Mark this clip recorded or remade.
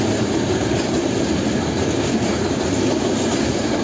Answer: recorded